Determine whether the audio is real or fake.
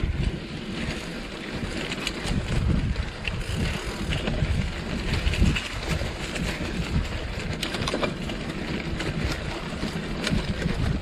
real